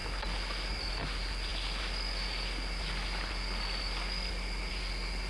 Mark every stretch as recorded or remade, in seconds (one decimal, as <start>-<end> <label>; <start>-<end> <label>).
0.0-5.3 recorded